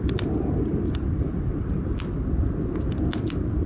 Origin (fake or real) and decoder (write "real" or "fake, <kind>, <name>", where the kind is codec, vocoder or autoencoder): real